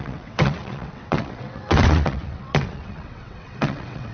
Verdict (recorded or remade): remade